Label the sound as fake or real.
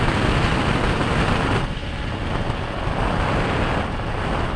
real